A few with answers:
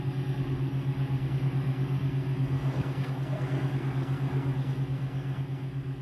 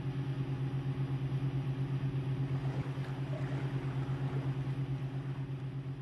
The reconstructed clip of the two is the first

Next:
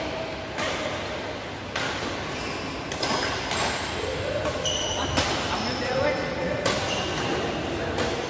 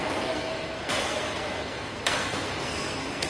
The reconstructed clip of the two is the second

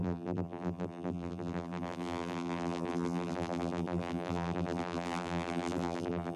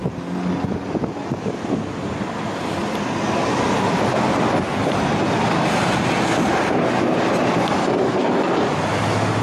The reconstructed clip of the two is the first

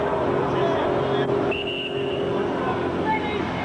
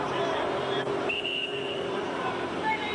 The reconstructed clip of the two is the second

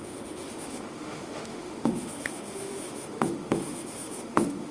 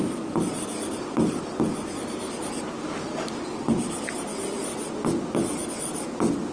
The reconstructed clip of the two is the first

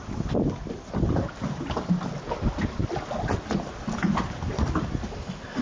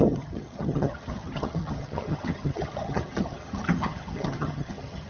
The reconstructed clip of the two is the second